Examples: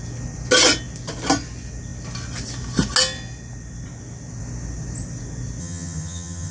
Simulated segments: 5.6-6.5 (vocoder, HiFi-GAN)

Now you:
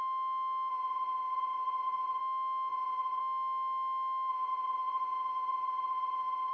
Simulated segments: 0.7-2.2 (vocoder, HiFi-GAN); 2.7-3.2; 4.3-6.5